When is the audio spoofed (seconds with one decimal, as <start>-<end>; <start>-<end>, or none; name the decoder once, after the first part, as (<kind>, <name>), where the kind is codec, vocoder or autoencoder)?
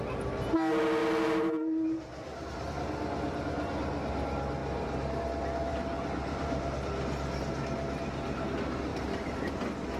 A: 1.0-2.7 (vocoder, BigVGAN v2); 4.6-5.2; 5.7-6.9; 8.9-9.6